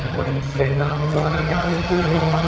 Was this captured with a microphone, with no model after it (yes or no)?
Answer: no